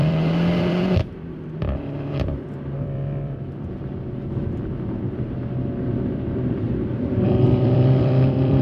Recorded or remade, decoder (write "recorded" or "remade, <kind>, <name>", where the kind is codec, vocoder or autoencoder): remade, vocoder, BigVGAN v2